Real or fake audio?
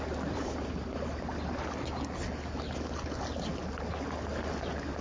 real